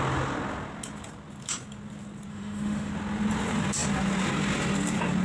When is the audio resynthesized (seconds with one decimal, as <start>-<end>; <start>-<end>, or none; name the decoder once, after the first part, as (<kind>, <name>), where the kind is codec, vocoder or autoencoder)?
2.3-2.9 (autoencoder, DAC-VAE)